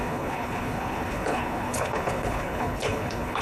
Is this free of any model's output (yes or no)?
no